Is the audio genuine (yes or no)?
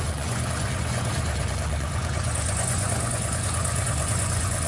no